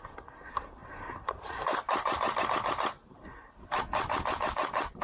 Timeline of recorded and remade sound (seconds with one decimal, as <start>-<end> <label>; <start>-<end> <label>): 0.0-0.8 recorded; 0.8-3.8 remade; 3.8-5.0 recorded